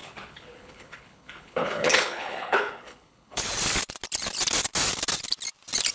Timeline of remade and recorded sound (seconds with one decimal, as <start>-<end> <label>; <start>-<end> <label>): 0.0-3.5 remade; 3.5-5.9 recorded